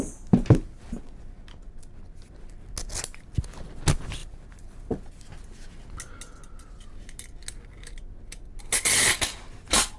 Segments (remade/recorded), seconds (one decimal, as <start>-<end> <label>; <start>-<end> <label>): 0.0-10.0 recorded